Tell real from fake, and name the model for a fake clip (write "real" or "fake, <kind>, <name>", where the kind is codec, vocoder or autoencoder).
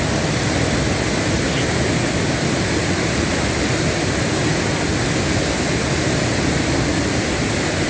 real